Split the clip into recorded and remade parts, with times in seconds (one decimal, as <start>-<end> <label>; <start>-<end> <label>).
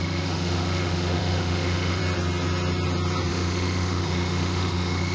0.0-2.0 remade; 2.0-3.3 recorded; 3.3-5.1 remade